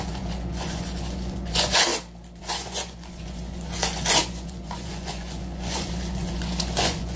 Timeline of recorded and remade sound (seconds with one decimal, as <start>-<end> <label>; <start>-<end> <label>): 0.0-1.9 remade; 1.9-2.4 recorded; 2.4-7.2 remade